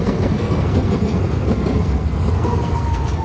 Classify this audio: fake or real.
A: fake